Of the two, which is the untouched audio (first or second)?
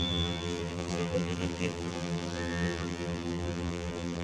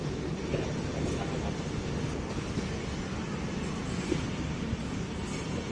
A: second